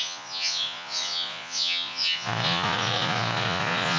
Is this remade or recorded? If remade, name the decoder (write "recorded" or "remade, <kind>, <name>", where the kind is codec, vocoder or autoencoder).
remade, vocoder, Vocos